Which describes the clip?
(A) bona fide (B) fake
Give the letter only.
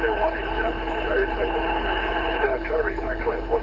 B